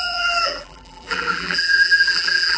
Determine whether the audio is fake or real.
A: fake